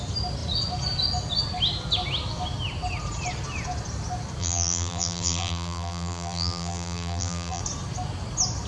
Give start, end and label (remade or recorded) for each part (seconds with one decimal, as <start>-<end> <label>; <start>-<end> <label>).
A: 0.0-4.4 recorded; 4.4-7.6 remade; 7.6-8.7 recorded